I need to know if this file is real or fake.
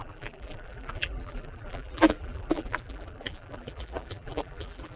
fake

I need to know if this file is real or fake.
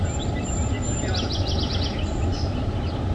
fake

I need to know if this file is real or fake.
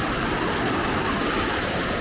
real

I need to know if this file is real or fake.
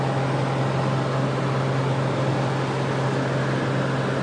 real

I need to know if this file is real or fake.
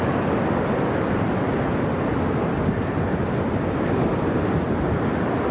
real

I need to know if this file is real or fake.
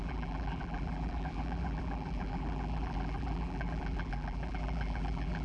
fake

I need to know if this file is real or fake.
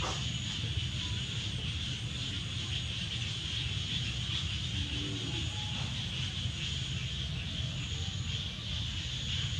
real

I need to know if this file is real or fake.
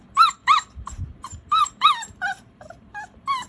fake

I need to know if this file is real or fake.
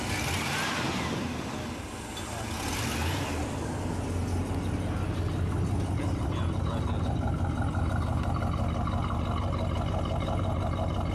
real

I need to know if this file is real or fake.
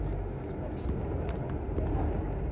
real